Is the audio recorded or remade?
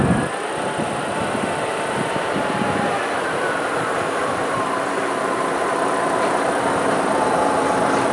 remade